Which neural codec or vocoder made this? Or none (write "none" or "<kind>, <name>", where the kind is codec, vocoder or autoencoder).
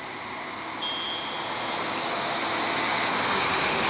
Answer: none